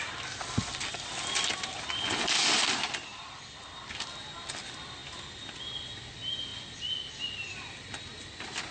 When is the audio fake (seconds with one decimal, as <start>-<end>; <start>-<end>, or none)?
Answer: none

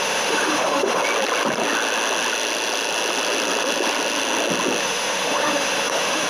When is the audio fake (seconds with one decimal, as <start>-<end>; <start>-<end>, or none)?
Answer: 0.0-1.0; 4.8-6.3